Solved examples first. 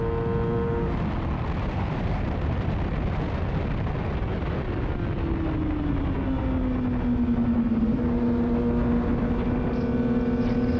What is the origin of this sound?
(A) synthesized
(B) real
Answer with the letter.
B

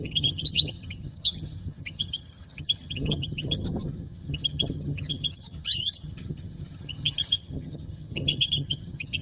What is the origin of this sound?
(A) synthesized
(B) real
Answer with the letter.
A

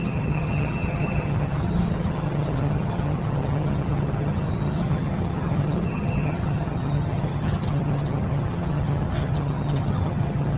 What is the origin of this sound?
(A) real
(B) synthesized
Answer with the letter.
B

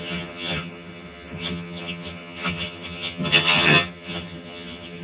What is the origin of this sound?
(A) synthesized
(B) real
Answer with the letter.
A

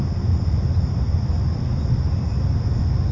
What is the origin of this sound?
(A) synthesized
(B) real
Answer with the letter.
B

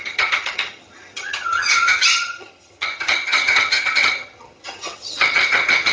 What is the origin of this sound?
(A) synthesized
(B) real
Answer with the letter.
A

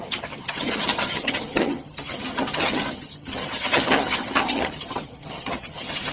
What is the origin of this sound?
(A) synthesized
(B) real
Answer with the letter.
A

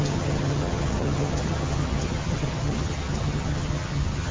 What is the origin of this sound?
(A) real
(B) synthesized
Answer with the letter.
B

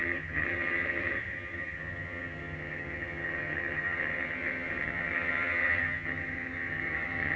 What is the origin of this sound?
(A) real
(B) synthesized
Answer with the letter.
B